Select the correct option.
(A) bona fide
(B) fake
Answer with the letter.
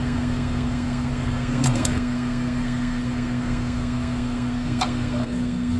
B